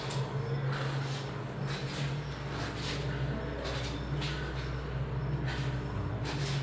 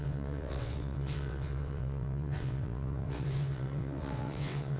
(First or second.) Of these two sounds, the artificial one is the second